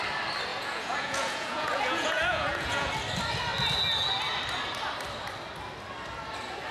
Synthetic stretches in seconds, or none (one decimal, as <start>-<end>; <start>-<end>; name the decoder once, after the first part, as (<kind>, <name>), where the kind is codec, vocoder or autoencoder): 0.5-2.9 (vocoder, Vocos)